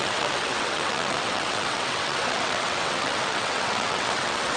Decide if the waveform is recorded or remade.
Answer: remade